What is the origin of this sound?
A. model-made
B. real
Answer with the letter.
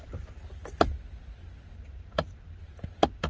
B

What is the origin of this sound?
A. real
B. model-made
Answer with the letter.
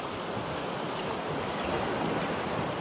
A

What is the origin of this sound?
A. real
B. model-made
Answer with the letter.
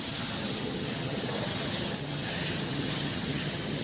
B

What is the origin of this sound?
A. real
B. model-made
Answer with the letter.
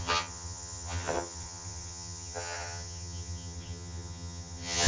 B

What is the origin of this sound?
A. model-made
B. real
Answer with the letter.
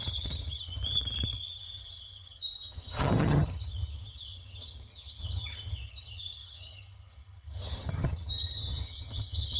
A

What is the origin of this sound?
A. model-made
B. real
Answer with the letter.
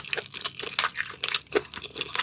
B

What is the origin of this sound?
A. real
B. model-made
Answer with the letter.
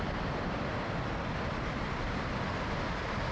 A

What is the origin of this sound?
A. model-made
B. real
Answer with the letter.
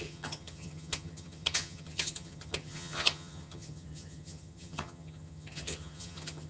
A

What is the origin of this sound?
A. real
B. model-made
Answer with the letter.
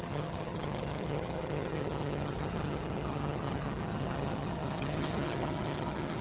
B